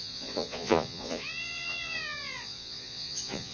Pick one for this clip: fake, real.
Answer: fake